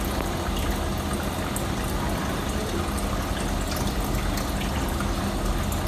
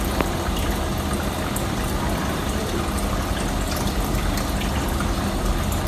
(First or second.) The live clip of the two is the first